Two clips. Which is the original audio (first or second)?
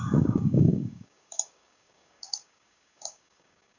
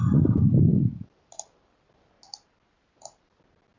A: second